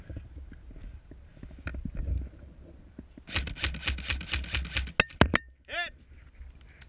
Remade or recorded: recorded